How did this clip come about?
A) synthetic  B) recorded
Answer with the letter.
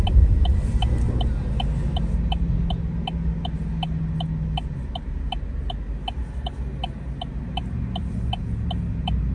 B